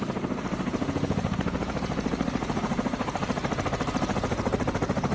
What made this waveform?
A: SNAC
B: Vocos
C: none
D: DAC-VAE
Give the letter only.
C